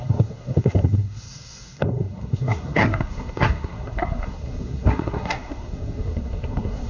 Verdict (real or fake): fake